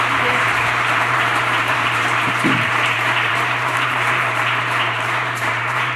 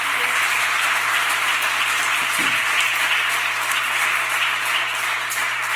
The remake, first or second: first